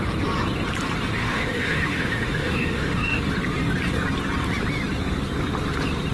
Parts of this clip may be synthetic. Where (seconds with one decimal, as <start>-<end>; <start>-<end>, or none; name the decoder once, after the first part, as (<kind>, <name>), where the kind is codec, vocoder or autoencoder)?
1.2-3.2 (autoencoder, DAC-VAE)